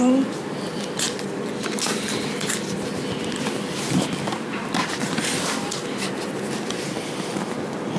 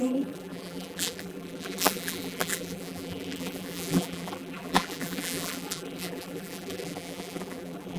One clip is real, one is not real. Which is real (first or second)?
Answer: first